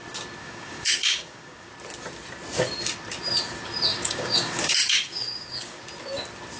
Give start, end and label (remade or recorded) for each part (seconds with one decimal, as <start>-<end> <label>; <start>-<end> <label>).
0.0-0.4 recorded; 0.4-1.7 remade; 1.7-3.9 recorded; 3.9-5.8 remade; 5.8-6.6 recorded